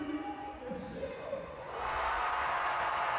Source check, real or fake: fake